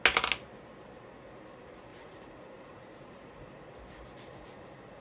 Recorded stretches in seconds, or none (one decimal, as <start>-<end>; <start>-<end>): 0.0-1.9; 3.7-4.3